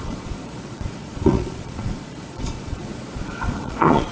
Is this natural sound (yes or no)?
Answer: no